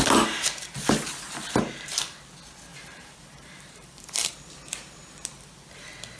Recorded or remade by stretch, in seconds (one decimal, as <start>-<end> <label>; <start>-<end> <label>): 0.0-2.7 recorded; 2.7-4.3 remade; 4.3-6.2 recorded